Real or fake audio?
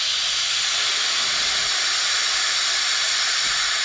real